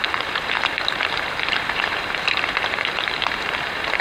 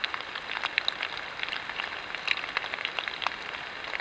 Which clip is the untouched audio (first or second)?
second